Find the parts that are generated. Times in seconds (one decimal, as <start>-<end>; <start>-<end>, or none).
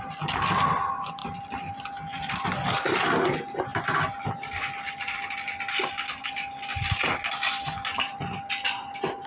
none